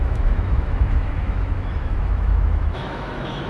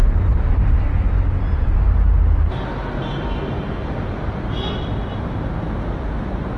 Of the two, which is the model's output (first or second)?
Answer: first